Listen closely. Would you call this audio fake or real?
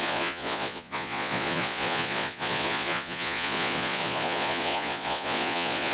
fake